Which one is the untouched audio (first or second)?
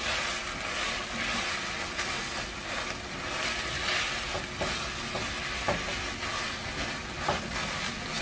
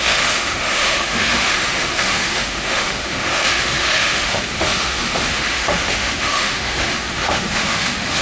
first